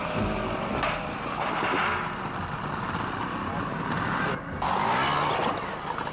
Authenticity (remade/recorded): recorded